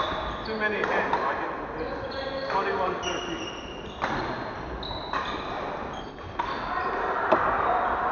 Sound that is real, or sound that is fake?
real